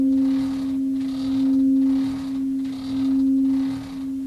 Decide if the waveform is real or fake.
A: real